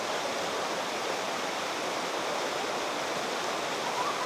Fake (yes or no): no